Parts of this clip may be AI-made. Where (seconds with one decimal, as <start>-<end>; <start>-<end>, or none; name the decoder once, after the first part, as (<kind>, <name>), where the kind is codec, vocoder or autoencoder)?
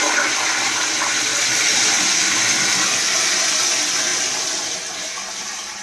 none